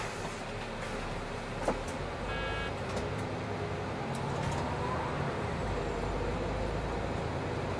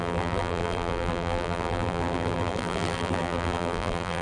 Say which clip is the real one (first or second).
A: first